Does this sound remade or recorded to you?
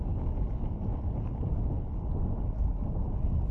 recorded